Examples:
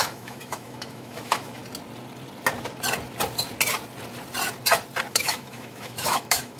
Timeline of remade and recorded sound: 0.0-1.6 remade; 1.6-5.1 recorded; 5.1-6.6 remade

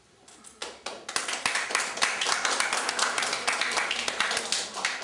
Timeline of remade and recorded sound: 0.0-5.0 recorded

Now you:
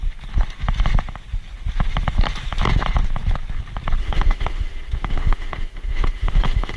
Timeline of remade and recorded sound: 0.0-4.0 recorded; 4.0-6.8 remade

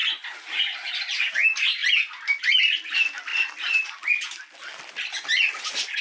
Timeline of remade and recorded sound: 0.0-6.0 recorded

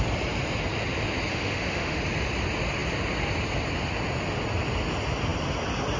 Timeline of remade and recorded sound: 0.0-1.3 recorded; 1.3-2.0 remade; 2.0-6.0 recorded